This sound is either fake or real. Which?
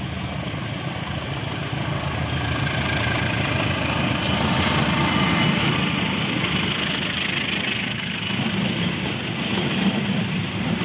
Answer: real